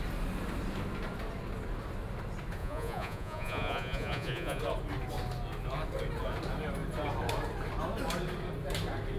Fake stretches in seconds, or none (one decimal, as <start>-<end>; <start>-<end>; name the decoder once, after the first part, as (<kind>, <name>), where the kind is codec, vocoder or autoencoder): 2.6-4.6 (vocoder, Vocos)